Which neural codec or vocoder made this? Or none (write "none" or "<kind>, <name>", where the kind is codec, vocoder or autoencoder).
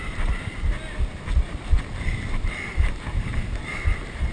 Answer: none